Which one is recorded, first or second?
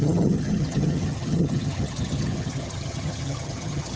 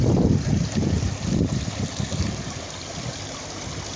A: second